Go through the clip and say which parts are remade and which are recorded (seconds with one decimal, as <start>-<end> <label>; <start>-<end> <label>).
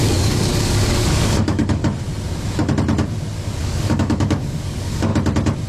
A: 0.0-1.8 remade; 1.8-3.6 recorded; 3.6-5.1 remade; 5.1-5.7 recorded